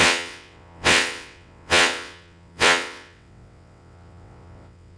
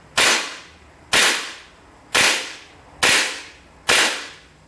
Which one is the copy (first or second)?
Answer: first